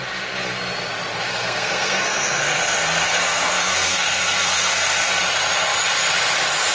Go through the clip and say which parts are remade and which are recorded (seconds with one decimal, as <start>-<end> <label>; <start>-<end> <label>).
0.0-1.2 recorded; 1.2-5.2 remade; 5.2-6.7 recorded